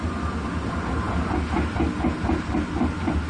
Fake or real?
real